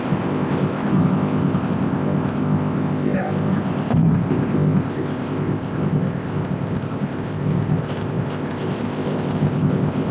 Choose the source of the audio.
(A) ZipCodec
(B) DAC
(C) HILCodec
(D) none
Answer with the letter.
A